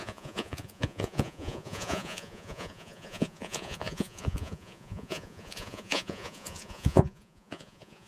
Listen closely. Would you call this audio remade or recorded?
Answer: remade